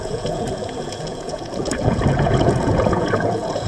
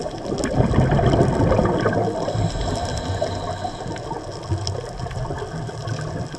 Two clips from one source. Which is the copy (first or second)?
first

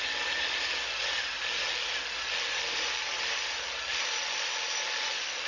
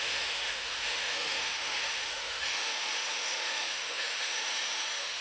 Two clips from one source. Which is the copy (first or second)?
second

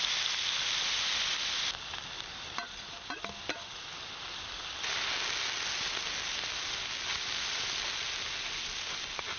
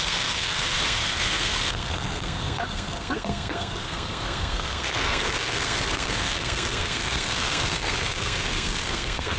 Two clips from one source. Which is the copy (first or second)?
second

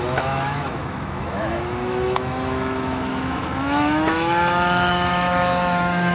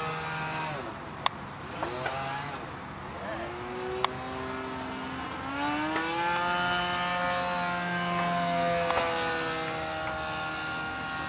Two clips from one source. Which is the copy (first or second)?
first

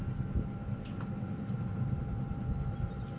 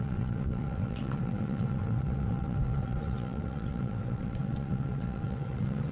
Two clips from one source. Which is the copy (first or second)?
second